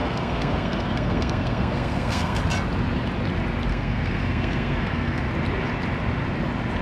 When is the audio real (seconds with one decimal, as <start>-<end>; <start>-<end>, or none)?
2.4-3.7; 5.3-6.8